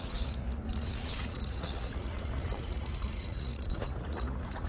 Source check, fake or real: fake